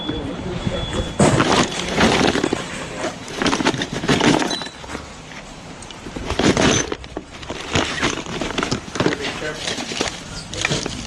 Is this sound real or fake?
fake